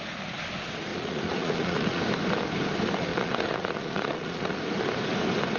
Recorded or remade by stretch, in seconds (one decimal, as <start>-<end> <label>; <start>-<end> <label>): 0.0-0.9 recorded; 0.9-2.0 remade; 2.0-3.1 recorded; 3.1-4.6 remade; 4.6-5.6 recorded